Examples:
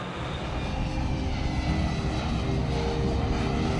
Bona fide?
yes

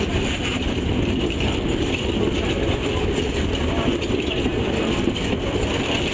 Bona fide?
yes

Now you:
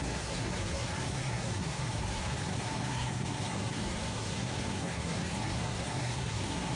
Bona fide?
no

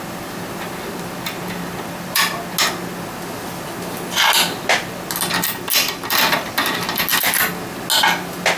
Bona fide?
yes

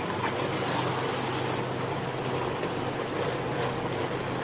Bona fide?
yes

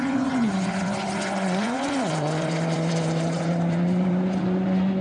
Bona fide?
no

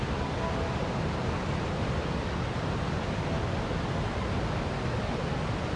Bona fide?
yes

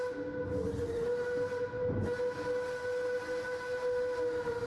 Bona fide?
yes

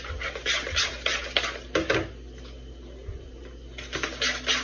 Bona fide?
yes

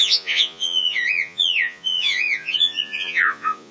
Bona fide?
no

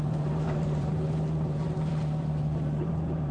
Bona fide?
no